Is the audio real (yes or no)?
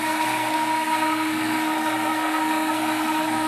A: no